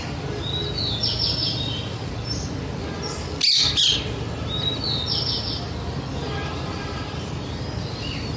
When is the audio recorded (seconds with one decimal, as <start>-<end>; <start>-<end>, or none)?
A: 0.0-1.4; 2.1-6.2; 7.3-8.4